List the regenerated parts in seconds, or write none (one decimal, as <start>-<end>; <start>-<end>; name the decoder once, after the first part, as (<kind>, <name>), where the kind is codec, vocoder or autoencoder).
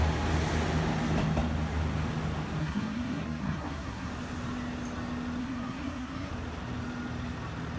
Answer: 2.6-4.1 (codec, SNAC); 5.4-6.3